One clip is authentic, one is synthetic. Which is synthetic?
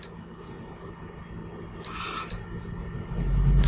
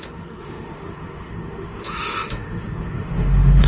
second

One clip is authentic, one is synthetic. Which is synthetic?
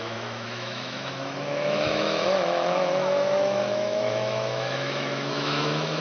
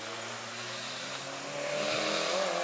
first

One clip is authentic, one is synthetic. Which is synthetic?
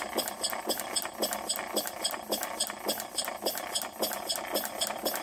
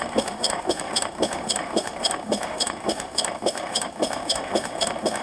second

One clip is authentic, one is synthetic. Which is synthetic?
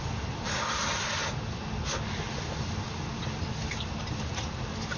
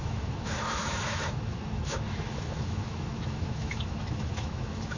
second